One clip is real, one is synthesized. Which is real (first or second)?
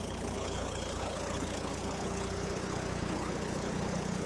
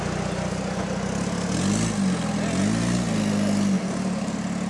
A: second